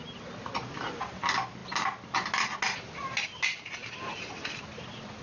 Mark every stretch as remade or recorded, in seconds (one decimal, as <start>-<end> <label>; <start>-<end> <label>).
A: 0.0-5.2 recorded